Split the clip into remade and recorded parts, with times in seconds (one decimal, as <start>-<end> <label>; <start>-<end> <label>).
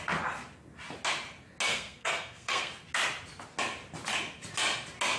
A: 0.0-1.7 recorded; 1.7-2.7 remade; 2.7-5.2 recorded